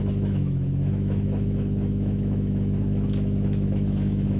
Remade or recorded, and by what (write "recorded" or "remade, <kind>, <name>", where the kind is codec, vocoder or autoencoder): remade, autoencoder, DAC-VAE